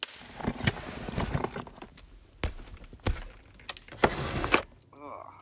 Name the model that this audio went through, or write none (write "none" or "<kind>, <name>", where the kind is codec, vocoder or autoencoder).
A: none